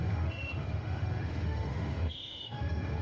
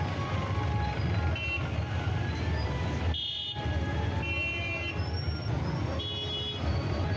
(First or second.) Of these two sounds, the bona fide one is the second